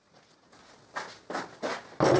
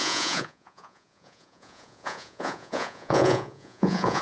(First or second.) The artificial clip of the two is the second